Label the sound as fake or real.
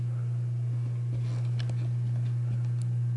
real